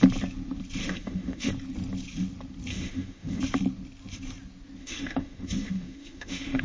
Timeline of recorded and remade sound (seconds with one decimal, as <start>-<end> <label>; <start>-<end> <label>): 0.0-0.8 recorded; 0.8-1.5 remade; 1.5-2.7 recorded; 2.7-3.4 remade; 3.4-4.8 recorded; 4.8-6.6 remade